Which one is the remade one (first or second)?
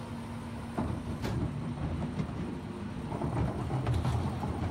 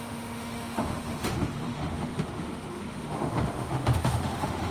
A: second